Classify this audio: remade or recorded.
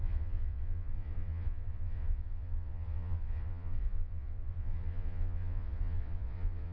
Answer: remade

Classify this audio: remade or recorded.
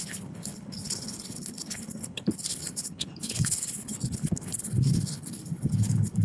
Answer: remade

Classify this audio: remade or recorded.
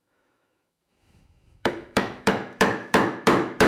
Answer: remade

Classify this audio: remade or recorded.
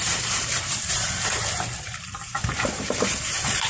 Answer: remade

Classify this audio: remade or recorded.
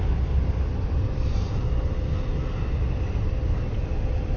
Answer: recorded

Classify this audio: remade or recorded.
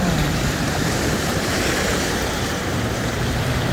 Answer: remade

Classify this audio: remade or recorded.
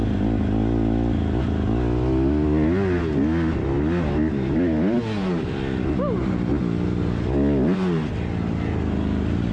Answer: recorded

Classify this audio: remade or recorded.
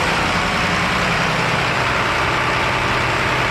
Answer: recorded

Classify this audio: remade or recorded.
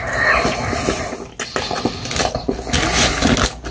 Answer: recorded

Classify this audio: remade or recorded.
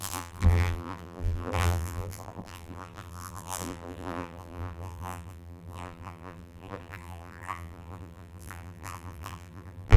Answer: remade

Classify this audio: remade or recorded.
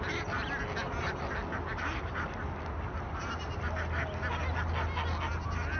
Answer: recorded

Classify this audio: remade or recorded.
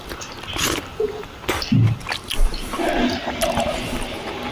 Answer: recorded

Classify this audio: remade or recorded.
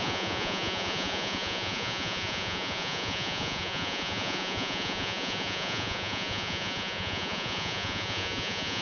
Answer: remade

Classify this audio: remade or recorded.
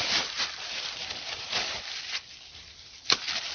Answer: remade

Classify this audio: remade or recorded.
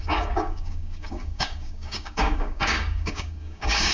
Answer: remade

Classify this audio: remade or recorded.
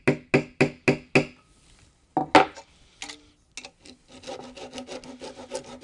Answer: recorded